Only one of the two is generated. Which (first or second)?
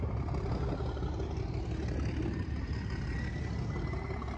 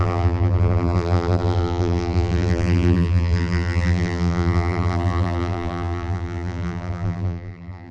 second